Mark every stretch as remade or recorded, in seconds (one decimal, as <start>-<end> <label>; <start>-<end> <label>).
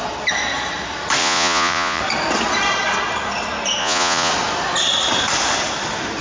0.0-1.2 recorded; 1.2-2.0 remade; 2.0-3.8 recorded; 3.8-4.3 remade; 4.3-6.2 recorded